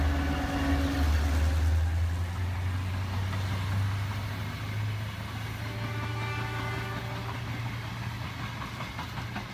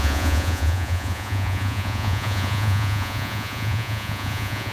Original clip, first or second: first